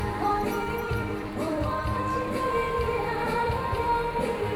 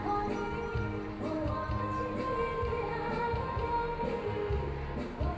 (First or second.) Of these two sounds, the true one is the second